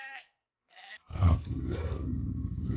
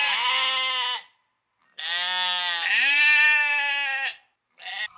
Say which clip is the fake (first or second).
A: first